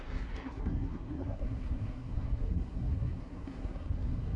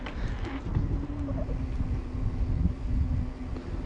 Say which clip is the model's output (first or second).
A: first